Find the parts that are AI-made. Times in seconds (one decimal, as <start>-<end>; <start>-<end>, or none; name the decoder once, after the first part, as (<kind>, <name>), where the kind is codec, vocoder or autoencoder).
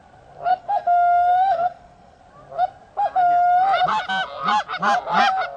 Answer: 0.5-2.2 (codec, SNAC)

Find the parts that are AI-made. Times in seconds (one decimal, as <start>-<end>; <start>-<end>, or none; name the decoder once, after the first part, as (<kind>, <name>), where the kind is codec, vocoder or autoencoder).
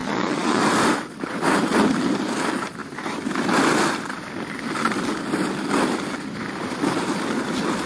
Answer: 0.0-0.6 (vocoder, Vocos)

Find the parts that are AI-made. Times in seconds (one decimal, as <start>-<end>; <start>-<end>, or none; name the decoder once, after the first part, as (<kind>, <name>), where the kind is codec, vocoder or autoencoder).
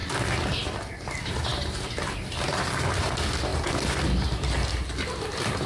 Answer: none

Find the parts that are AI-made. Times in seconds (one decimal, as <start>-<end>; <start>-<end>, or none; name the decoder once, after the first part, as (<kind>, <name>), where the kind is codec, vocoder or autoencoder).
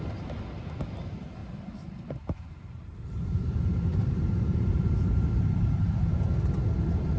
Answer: 1.4-3.5 (vocoder, BigVGAN v2); 3.9-6.3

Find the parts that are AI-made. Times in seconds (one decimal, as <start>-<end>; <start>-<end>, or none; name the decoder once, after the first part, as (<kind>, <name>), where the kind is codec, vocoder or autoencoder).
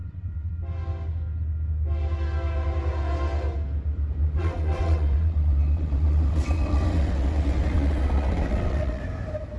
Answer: 0.0-0.5 (vocoder, WaveNeXt); 4.2-9.0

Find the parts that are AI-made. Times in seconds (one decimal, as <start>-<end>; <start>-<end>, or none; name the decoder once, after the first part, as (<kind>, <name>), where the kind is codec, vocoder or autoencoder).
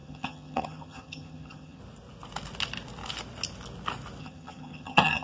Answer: 0.0-1.8 (vocoder, HiFi-GAN); 4.2-5.2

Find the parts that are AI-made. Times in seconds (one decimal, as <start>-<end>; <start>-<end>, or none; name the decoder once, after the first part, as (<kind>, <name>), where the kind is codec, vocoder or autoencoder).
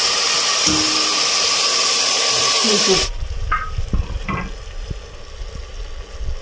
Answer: 2.6-4.3 (vocoder, BigVGAN v2)